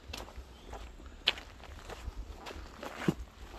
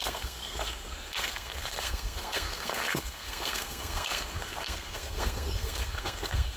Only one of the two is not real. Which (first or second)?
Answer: second